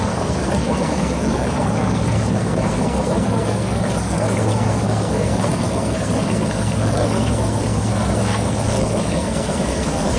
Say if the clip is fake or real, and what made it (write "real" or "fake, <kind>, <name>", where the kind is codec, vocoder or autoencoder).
fake, codec, SNAC